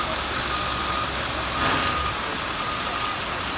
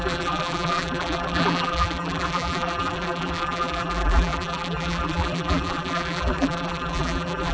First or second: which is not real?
second